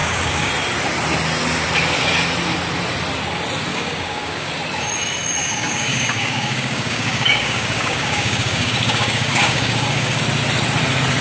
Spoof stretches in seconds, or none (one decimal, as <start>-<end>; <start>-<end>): 0.0-0.5; 3.7-4.5; 5.4-10.2